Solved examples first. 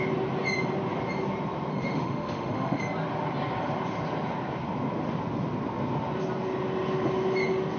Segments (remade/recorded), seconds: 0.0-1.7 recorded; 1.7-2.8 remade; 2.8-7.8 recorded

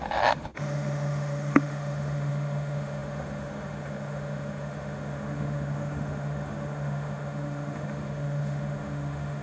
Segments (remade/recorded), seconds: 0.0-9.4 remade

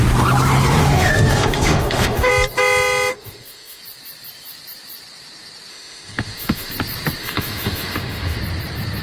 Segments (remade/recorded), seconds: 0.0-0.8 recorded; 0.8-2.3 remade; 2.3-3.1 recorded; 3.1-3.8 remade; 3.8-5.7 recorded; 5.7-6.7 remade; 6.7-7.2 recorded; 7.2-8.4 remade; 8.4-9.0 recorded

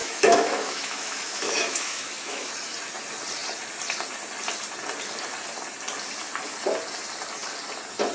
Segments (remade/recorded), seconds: 0.0-2.5 remade; 2.5-8.1 recorded